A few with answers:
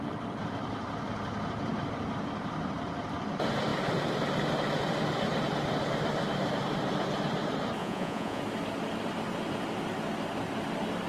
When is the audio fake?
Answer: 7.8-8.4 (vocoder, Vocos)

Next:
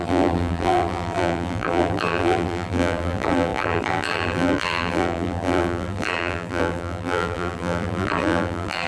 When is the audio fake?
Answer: 0.0-8.9 (vocoder, BigVGAN v2)